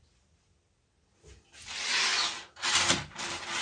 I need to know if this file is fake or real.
real